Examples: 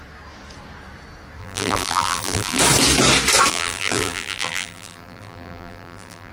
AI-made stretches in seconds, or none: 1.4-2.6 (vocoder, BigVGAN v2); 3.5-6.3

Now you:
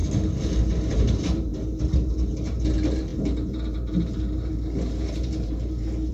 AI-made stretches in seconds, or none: 0.9-6.1 (vocoder, BigVGAN v2)

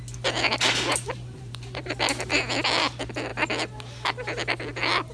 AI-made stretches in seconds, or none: 0.9-1.9 (vocoder, BigVGAN v2)